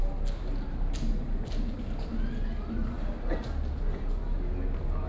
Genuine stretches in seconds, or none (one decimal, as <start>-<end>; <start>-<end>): 0.0-5.1